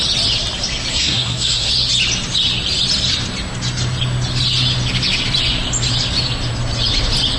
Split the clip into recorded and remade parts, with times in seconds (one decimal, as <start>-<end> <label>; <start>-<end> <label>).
0.0-0.9 recorded; 0.9-1.7 remade; 1.7-7.4 recorded